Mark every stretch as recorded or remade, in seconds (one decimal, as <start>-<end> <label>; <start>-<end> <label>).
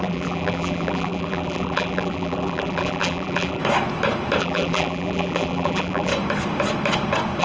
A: 0.0-3.6 remade; 3.6-4.4 recorded; 4.4-6.1 remade; 6.1-7.4 recorded